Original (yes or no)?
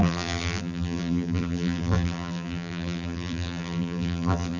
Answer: no